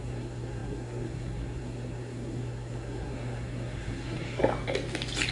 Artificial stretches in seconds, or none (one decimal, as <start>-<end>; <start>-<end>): 0.0-4.4

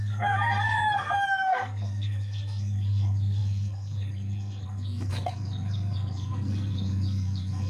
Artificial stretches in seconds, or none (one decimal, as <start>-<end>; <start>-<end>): 0.0-7.7

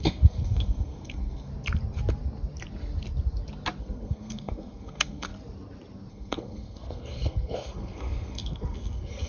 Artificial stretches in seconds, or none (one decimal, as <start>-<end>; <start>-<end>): 0.0-1.5; 3.8-5.3; 6.1-9.3

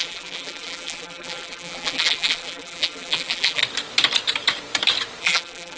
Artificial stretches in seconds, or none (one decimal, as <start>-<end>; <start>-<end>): 0.0-3.6; 5.2-5.8

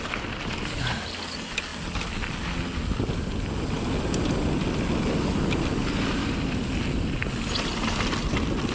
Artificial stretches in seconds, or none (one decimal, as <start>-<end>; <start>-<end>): none